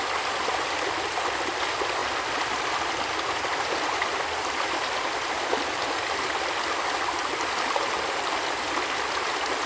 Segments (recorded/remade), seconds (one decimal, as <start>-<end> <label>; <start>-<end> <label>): 0.0-9.7 recorded